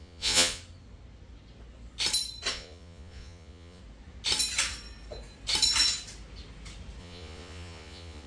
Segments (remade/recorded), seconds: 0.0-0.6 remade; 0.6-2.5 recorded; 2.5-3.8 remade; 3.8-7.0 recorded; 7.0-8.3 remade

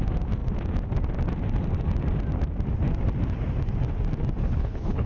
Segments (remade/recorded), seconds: 0.0-4.4 recorded; 4.4-5.1 remade

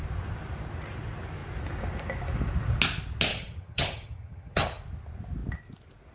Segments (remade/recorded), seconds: 0.0-3.3 recorded; 3.3-4.8 remade; 4.8-6.1 recorded